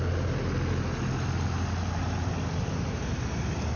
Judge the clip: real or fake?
real